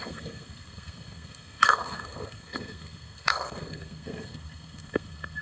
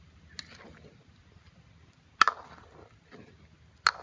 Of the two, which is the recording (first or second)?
second